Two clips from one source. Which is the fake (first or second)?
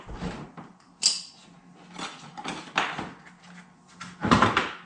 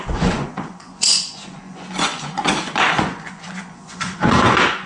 second